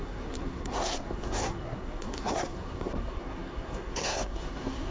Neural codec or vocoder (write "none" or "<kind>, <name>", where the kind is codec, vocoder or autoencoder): codec, SNAC